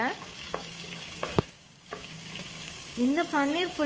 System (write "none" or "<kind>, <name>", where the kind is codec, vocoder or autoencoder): codec, DAC